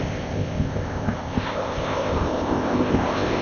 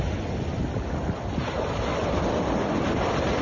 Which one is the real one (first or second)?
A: second